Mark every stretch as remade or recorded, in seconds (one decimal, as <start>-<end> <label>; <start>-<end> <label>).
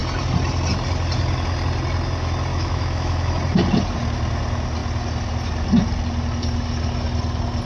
0.0-2.5 recorded; 2.5-3.3 remade; 3.3-7.7 recorded